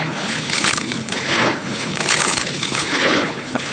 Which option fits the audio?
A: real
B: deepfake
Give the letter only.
B